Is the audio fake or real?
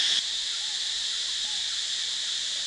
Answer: real